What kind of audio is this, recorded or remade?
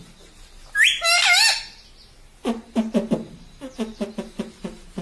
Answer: recorded